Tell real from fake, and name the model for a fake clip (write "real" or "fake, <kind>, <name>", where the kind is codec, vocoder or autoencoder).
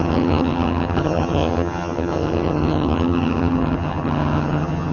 fake, vocoder, HiFi-GAN